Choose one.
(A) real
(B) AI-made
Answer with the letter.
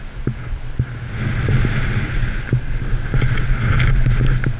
A